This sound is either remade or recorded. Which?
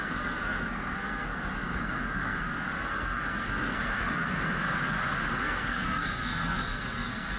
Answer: remade